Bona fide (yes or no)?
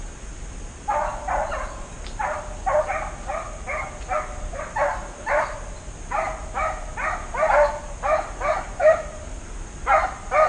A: yes